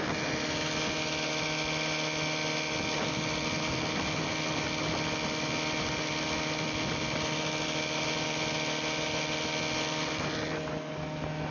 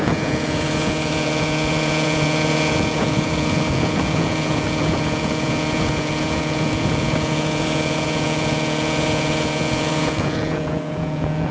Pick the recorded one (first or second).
first